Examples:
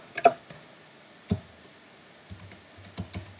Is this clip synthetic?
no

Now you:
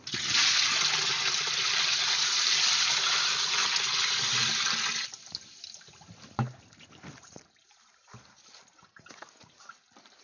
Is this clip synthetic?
no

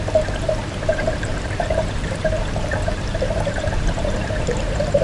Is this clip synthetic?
yes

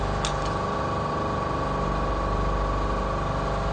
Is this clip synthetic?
no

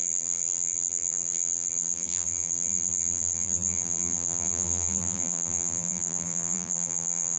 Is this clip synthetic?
yes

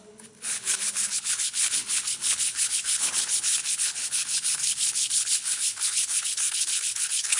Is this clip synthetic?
yes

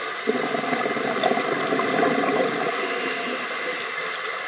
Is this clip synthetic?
no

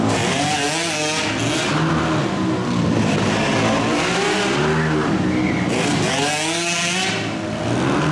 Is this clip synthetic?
no